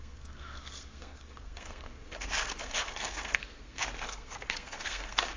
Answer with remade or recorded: remade